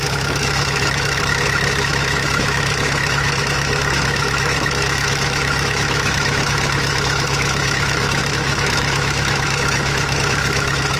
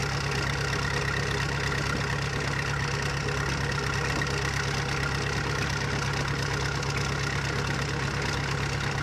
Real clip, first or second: second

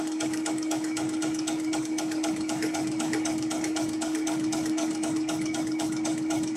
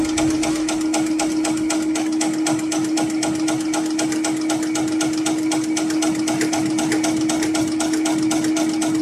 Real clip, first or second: second